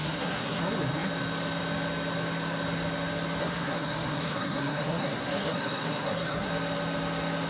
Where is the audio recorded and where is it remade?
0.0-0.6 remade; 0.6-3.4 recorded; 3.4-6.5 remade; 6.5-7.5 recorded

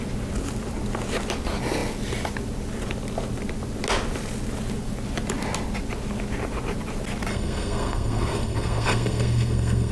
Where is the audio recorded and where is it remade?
0.0-7.3 recorded; 7.3-9.9 remade

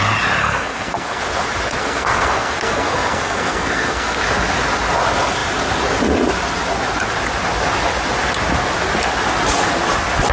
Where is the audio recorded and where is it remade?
0.0-0.4 recorded; 0.4-1.2 remade; 1.2-1.8 recorded; 1.8-4.2 remade; 4.2-10.3 recorded

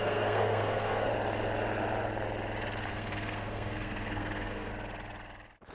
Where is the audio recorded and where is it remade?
0.0-1.1 remade; 1.1-2.9 recorded; 2.9-4.7 remade; 4.7-5.7 recorded

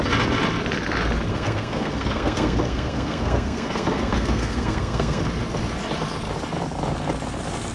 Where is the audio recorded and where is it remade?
0.0-1.3 recorded; 1.3-5.2 remade; 5.2-7.7 recorded

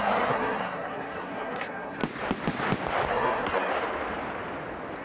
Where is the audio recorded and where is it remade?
0.0-2.0 remade; 2.0-3.1 recorded; 3.1-3.7 remade; 3.7-5.0 recorded

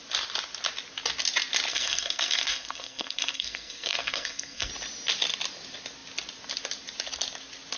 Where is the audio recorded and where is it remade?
0.0-1.7 recorded; 1.7-4.7 remade; 4.7-7.8 recorded

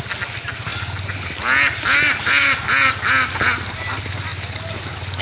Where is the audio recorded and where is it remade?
0.0-5.2 recorded